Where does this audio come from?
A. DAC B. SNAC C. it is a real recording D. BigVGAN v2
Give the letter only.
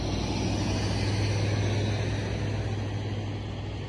C